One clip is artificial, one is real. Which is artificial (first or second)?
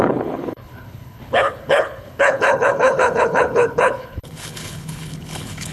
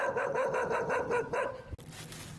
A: first